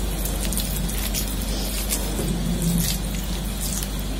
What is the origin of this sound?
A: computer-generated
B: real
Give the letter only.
B